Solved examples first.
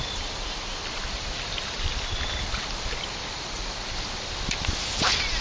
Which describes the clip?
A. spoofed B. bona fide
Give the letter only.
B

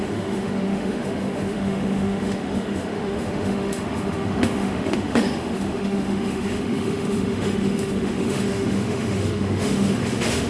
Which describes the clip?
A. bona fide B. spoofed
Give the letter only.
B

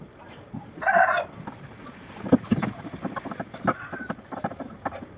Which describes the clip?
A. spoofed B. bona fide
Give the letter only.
B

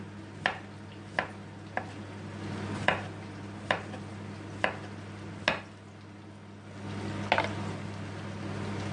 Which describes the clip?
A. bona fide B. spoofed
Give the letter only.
A